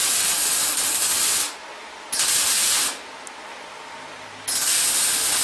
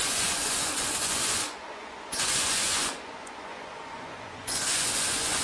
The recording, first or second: first